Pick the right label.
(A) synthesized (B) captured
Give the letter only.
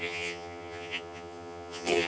A